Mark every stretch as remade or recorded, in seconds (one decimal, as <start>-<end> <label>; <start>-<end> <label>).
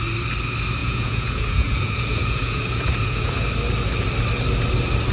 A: 0.0-0.8 recorded; 0.8-3.4 remade; 3.4-5.1 recorded